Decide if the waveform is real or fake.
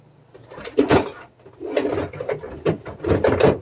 real